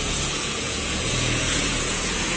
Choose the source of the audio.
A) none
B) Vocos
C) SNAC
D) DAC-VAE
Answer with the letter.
B